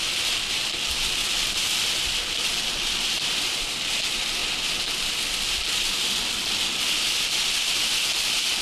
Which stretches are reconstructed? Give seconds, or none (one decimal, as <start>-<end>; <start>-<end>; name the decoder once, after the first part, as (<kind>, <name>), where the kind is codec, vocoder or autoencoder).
none